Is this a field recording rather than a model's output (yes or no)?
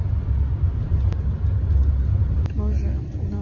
yes